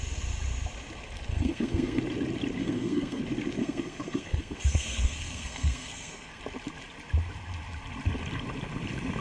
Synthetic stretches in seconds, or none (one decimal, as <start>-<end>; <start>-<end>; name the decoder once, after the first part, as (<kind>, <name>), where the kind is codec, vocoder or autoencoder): 1.3-2.0 (codec, SNAC); 2.6-3.2; 3.6-6.4